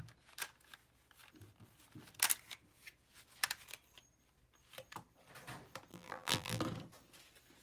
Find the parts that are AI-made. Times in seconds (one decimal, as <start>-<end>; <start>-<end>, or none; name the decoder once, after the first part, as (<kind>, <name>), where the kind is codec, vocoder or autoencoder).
5.9-6.6 (vocoder, BigVGAN v2)